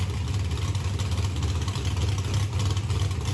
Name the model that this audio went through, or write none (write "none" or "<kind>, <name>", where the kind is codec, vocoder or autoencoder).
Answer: none